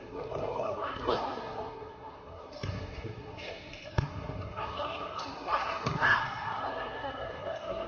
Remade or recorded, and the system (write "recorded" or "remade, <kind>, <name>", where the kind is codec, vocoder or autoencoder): remade, codec, SNAC